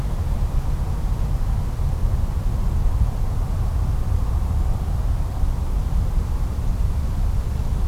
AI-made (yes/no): no